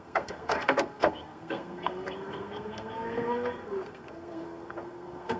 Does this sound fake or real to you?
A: fake